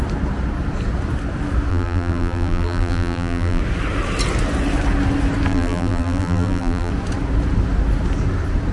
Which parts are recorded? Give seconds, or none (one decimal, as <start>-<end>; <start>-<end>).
0.0-1.7; 3.6-5.5; 6.9-8.7